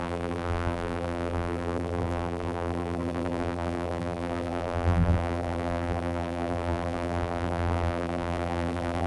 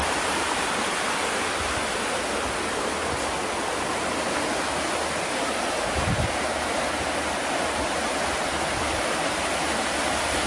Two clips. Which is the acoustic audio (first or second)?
second